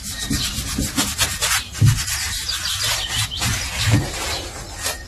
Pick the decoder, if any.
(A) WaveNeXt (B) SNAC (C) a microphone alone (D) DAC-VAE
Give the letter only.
C